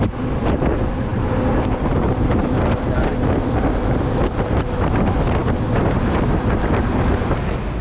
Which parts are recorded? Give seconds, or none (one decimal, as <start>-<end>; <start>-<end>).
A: 0.0-7.8